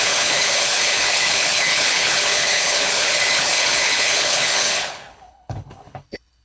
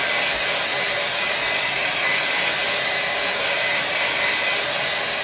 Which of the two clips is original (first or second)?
second